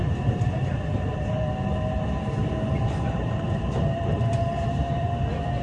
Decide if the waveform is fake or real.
fake